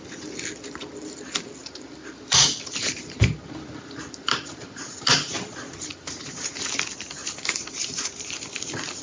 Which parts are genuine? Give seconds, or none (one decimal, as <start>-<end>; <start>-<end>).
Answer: 0.0-1.6; 5.5-5.9; 6.6-7.2; 8.3-9.0

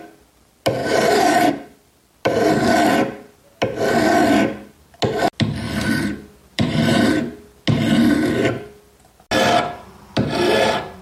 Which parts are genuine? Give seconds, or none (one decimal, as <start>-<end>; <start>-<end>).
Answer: 0.0-0.8; 1.5-6.4; 7.0-11.0

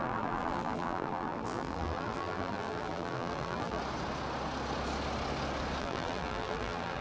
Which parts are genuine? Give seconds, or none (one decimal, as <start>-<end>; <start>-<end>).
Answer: 3.8-5.8

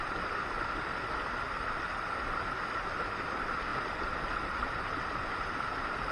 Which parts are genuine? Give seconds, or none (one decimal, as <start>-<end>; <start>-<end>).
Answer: 0.0-6.1